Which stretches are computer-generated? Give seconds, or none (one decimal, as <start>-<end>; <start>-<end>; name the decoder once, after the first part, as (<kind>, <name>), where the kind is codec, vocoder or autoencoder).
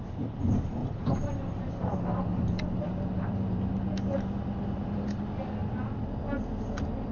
0.8-1.3 (vocoder, BigVGAN v2); 2.3-3.6